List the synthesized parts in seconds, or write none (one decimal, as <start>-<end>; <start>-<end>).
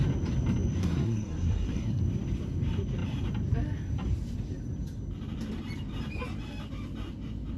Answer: 0.8-2.0